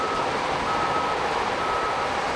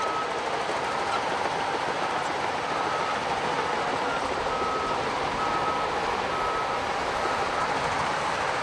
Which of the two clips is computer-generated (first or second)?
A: first